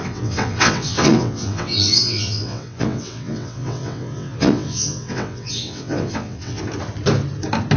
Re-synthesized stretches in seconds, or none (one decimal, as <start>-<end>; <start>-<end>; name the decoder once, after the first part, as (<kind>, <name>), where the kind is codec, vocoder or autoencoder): 0.0-6.6 (vocoder, WaveNeXt)